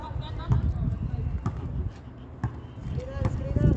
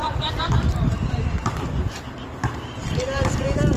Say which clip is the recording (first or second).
first